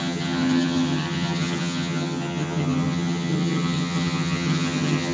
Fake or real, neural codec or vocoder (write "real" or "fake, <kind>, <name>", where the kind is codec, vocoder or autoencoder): fake, vocoder, HiFi-GAN